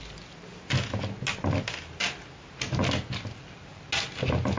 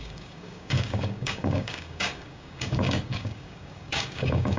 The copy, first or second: second